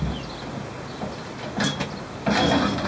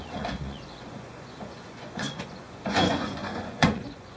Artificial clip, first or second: second